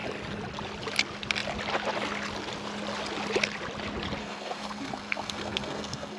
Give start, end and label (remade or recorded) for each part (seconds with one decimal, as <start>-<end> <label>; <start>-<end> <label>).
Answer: 0.0-4.2 recorded; 4.2-6.2 remade